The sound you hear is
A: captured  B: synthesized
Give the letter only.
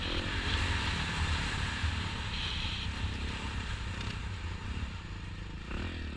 A